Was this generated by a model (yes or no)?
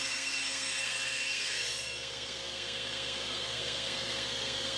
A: yes